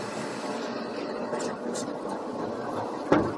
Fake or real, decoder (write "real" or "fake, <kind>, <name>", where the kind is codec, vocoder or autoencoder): real